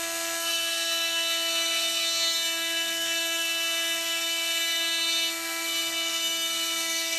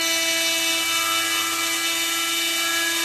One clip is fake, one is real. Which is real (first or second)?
second